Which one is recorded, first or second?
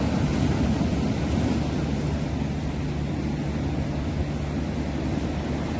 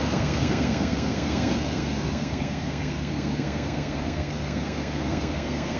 first